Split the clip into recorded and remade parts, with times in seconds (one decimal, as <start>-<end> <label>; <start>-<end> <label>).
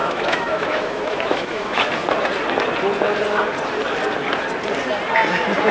0.0-1.9 remade; 1.9-5.7 recorded